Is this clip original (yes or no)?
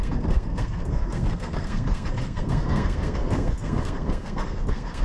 no